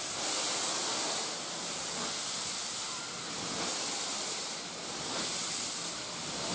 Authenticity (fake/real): fake